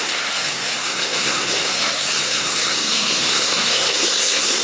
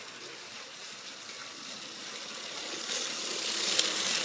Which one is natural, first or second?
second